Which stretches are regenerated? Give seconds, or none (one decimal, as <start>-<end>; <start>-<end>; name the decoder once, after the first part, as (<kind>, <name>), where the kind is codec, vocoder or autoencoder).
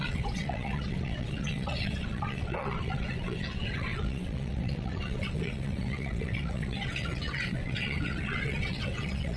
0.0-9.4 (vocoder, WaveNeXt)